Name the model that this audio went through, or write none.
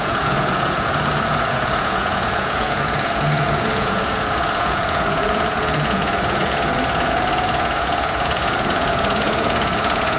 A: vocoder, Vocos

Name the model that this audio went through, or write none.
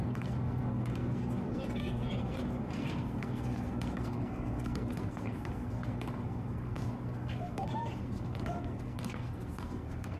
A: codec, SNAC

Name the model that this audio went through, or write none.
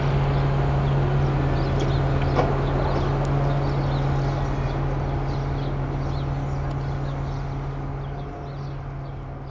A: none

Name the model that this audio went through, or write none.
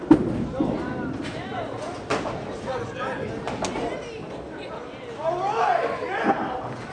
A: none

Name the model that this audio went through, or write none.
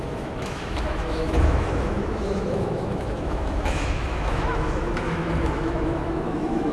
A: autoencoder, DAC-VAE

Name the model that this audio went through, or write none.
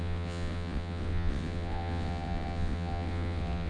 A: vocoder, WaveNeXt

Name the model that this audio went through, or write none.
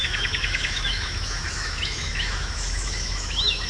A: autoencoder, DAC-VAE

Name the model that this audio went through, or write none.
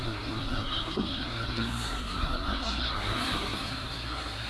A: codec, SNAC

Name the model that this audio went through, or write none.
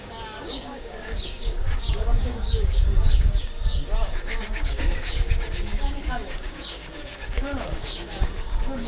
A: codec, DAC